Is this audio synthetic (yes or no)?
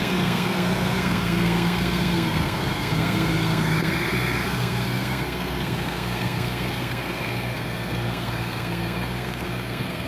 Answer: yes